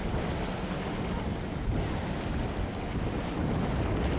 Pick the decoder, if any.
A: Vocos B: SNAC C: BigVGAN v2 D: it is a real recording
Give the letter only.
D